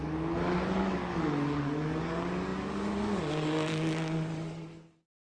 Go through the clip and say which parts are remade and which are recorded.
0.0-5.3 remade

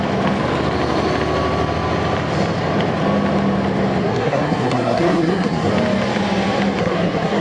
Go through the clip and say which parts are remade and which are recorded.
0.0-4.0 recorded; 4.0-5.7 remade; 5.7-6.8 recorded; 6.8-7.4 remade

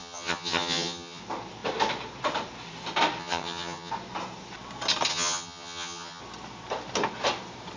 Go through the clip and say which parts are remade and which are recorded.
0.0-1.2 remade; 1.2-3.2 recorded; 3.2-3.9 remade; 3.9-5.1 recorded; 5.1-6.2 remade; 6.2-7.8 recorded

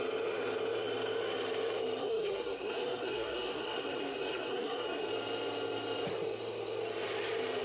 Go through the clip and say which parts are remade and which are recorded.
0.0-2.0 recorded; 2.0-5.1 remade; 5.1-7.6 recorded